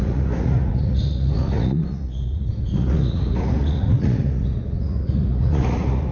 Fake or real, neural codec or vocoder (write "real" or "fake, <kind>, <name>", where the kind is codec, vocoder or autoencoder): fake, vocoder, Vocos